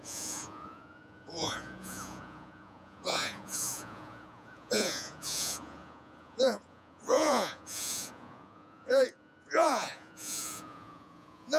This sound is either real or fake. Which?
fake